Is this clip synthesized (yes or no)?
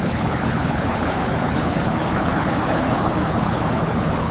yes